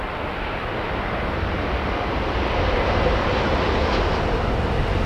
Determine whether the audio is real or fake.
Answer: real